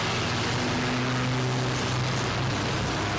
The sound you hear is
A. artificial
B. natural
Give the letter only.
B